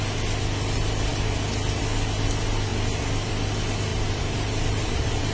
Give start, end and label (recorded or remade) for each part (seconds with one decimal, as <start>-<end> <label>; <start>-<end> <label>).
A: 0.0-3.9 recorded; 3.9-5.3 remade